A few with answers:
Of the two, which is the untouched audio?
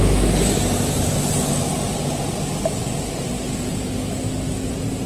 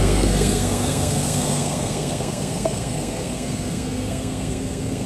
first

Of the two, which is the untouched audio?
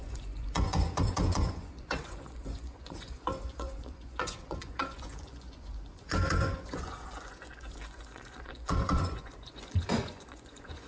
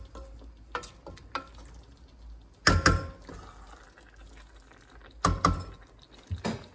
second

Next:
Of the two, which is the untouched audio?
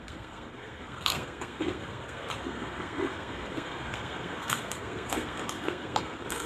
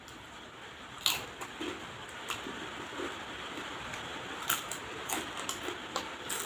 second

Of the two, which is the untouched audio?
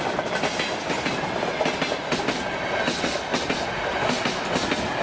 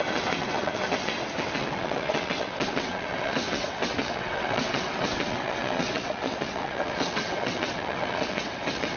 first